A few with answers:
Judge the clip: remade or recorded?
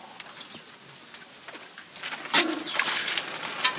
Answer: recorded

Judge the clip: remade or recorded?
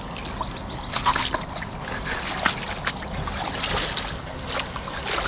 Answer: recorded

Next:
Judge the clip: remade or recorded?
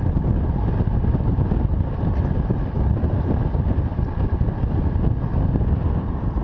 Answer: recorded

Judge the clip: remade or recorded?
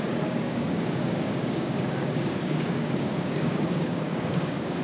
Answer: remade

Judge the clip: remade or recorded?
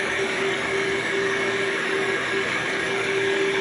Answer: remade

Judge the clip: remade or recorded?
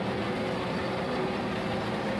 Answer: recorded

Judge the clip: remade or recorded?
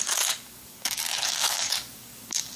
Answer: remade